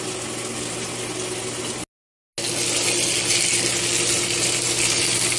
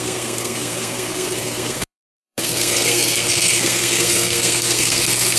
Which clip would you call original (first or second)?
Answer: first